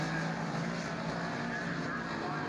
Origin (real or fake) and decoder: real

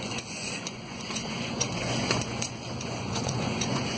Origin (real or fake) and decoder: fake, vocoder, Vocos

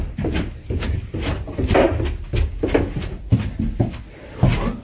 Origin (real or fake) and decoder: real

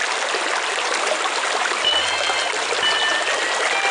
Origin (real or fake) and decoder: real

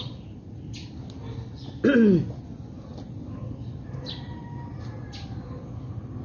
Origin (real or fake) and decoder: real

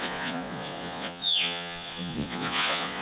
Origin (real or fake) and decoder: fake, vocoder, Vocos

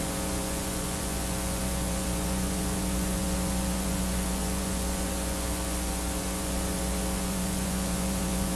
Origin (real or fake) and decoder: fake, vocoder, Vocos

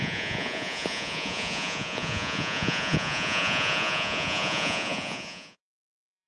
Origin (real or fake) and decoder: fake, vocoder, Vocos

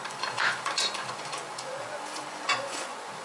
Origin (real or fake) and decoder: fake, vocoder, Vocos